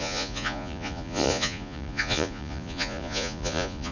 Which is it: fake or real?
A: fake